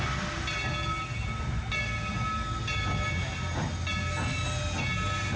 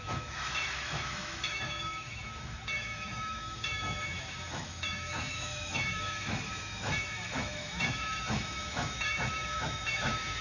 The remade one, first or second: second